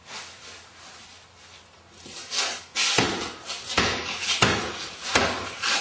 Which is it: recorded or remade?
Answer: recorded